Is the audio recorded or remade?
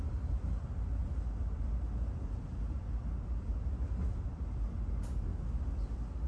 recorded